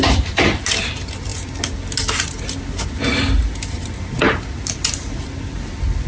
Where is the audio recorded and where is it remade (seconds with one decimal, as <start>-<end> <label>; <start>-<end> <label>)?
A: 0.0-6.1 recorded